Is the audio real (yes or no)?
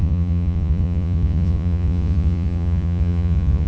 no